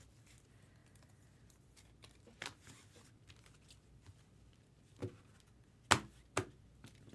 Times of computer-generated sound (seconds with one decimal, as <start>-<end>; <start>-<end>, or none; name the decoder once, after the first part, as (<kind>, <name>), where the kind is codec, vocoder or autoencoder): none